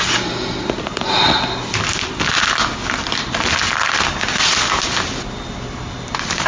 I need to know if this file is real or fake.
real